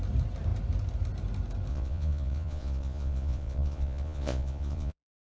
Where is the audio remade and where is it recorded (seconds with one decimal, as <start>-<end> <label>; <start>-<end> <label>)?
0.0-1.7 recorded; 1.7-5.3 remade